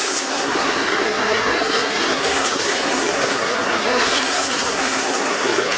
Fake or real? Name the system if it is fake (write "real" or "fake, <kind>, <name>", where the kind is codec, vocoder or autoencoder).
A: fake, codec, SNAC